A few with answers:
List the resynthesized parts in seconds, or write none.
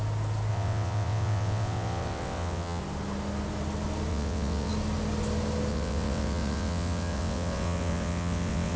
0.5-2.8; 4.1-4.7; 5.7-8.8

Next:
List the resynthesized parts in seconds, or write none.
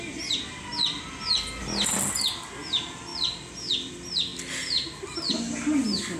none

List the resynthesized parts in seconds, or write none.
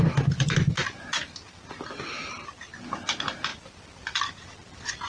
none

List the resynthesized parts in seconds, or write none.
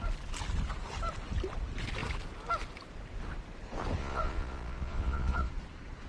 4.0-5.5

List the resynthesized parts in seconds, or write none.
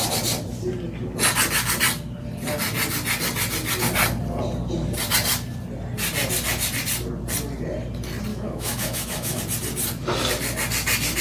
8.3-9.4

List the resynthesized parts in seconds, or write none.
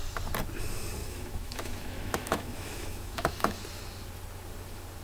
1.0-3.6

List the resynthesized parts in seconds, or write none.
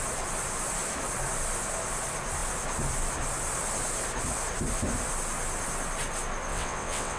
6.5-7.2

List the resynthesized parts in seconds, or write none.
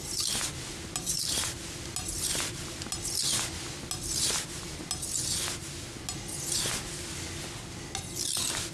none